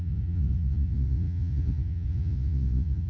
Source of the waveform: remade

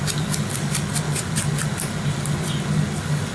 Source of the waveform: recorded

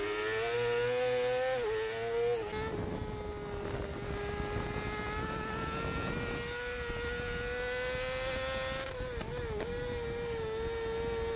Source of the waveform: recorded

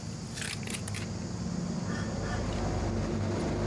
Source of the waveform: recorded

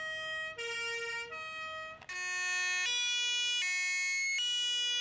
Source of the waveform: recorded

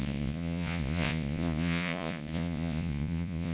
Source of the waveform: remade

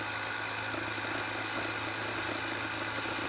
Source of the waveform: recorded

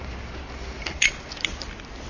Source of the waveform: recorded